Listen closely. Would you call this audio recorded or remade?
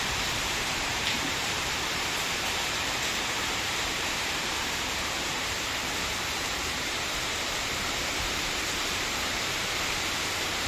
remade